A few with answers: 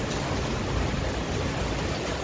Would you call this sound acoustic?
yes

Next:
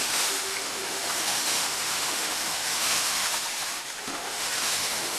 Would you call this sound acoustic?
no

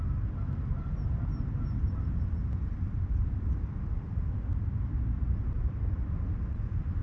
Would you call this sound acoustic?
yes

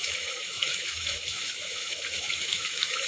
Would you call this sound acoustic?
no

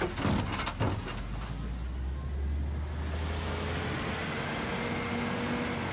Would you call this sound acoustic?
yes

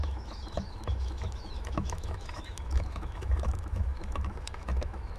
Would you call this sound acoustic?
no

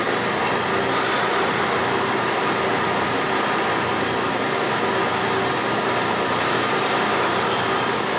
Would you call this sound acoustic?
yes